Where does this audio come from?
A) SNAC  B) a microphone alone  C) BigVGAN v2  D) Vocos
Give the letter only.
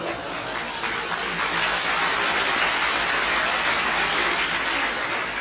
B